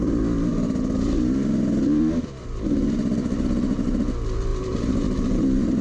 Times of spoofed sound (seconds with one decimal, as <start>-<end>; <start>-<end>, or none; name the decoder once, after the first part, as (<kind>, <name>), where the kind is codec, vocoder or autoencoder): 4.5-5.8 (vocoder, BigVGAN v2)